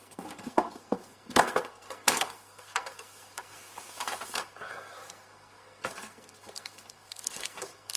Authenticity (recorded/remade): remade